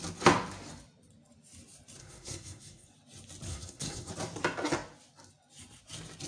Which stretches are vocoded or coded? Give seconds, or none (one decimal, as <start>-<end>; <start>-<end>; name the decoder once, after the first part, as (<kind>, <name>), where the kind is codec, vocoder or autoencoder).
2.0-2.9 (codec, SNAC); 3.5-4.1